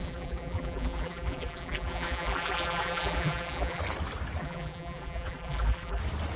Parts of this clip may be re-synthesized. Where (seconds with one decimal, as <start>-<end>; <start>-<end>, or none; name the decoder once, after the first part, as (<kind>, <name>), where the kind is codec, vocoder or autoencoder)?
0.0-3.8 (vocoder, BigVGAN v2); 4.4-6.0